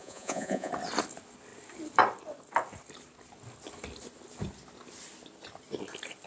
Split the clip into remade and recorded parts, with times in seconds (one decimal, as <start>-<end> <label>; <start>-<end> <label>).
0.0-0.7 remade; 0.7-6.3 recorded